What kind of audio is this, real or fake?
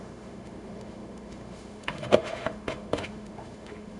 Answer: fake